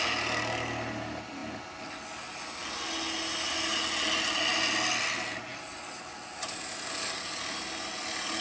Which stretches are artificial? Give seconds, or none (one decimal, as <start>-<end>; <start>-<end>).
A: none